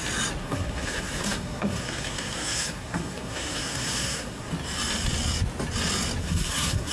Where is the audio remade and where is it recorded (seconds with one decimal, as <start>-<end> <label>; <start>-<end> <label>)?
0.0-0.4 recorded; 0.4-4.5 remade; 4.5-6.2 recorded; 6.2-6.9 remade